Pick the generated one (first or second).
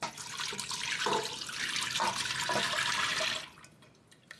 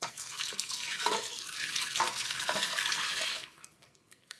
second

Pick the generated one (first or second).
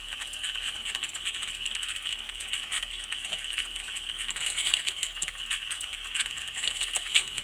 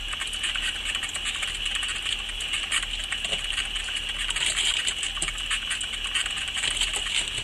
first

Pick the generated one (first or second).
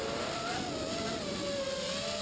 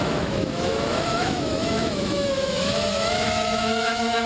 second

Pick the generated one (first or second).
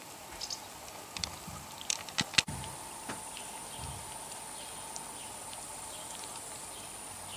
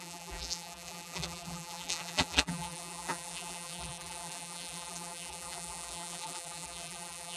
second